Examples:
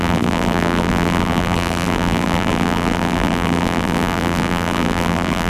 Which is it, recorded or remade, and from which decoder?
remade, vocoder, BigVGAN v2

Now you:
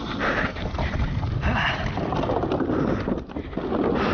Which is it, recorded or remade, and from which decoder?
remade, vocoder, BigVGAN v2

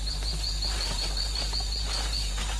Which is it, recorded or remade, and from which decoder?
remade, vocoder, BigVGAN v2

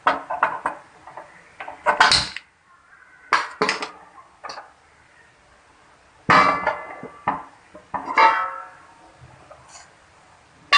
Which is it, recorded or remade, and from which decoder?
recorded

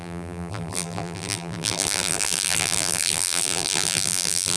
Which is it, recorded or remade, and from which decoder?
remade, vocoder, BigVGAN v2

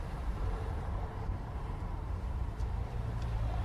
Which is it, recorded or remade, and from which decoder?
remade, vocoder, BigVGAN v2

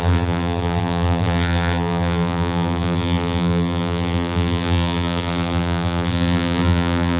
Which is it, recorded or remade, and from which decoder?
remade, vocoder, BigVGAN v2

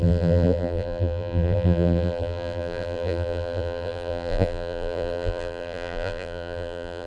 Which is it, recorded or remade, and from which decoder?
remade, vocoder, BigVGAN v2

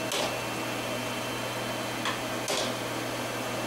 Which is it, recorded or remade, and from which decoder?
recorded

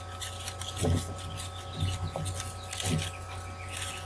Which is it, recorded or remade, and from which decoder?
recorded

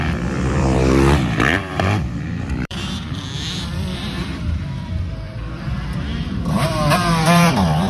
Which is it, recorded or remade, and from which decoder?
remade, vocoder, BigVGAN v2